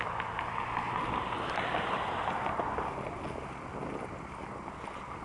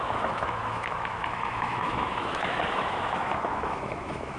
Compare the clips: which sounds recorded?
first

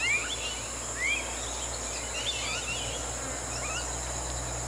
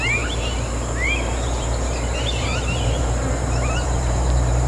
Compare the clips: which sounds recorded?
first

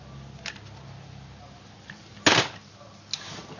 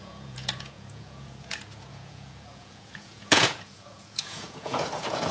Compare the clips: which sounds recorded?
first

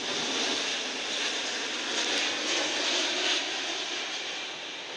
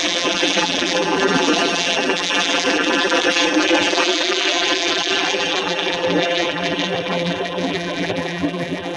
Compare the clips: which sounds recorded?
first